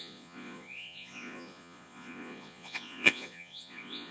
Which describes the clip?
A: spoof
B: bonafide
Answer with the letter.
A